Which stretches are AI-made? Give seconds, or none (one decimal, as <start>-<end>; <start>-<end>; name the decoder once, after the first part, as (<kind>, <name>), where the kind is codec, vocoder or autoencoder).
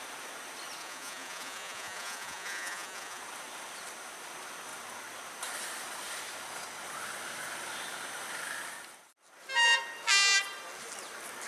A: 0.8-3.2 (vocoder, Vocos)